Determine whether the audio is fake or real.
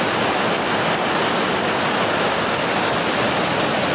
real